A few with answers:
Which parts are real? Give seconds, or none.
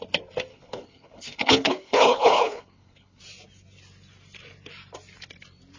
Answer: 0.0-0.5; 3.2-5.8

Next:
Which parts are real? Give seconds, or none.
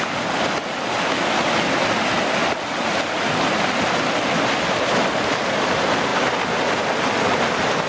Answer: 0.0-7.9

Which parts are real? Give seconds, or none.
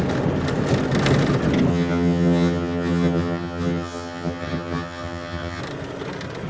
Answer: 0.0-1.7; 5.6-6.5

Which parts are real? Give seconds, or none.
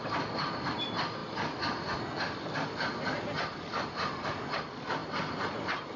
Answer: 0.0-6.0